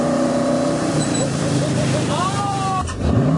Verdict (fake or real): fake